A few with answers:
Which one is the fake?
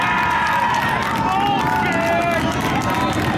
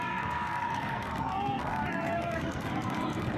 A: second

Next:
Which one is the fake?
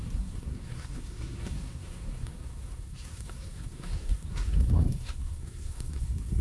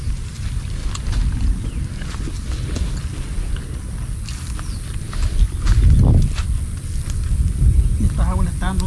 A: first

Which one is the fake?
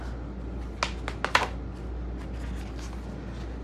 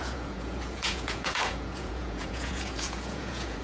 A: second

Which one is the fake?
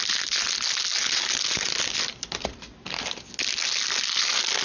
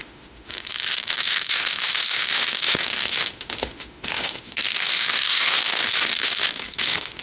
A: second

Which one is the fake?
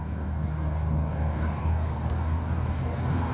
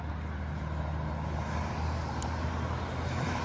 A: first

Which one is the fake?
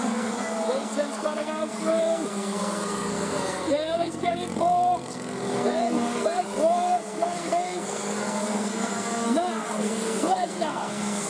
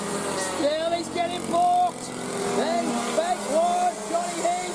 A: first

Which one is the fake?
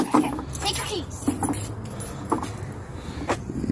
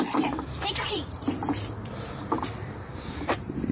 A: second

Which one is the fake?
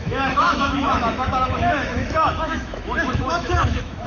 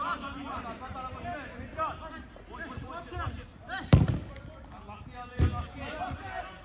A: first